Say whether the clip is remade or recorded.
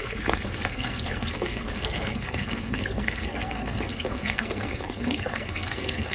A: remade